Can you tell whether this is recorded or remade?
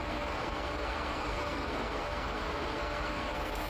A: remade